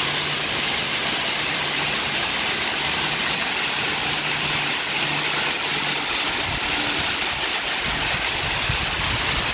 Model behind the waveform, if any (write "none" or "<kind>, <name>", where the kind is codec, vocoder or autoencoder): none